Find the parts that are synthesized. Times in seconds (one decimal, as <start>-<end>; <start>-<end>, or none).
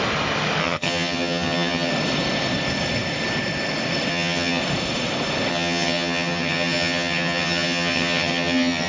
0.6-1.9; 4.1-4.6; 5.5-8.9